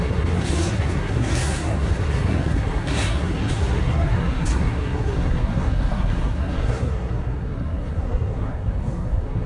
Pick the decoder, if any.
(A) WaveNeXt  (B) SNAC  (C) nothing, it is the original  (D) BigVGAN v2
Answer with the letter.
B